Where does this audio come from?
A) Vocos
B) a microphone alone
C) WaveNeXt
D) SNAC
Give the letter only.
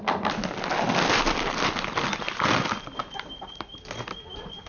B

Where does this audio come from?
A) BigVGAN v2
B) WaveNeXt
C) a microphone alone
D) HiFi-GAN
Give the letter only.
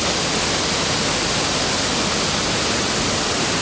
C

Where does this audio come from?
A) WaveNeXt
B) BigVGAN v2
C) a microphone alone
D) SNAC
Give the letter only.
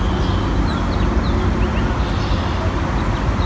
C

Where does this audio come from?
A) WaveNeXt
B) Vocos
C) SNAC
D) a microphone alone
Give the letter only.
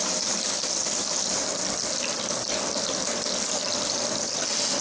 D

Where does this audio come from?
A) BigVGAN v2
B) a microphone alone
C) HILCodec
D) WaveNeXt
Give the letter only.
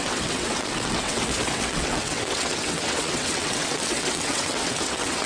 D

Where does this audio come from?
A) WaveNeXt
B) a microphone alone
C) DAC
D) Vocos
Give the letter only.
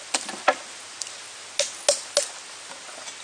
B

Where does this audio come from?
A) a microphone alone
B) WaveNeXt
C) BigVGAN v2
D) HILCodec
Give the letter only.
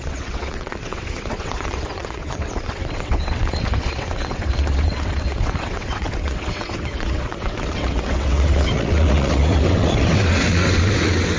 B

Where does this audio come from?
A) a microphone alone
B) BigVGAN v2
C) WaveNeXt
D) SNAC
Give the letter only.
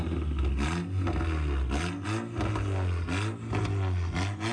A